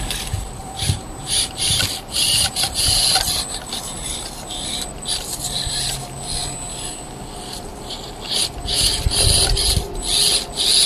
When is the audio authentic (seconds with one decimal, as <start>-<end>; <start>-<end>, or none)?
0.0-0.6; 1.5-2.2; 2.8-10.9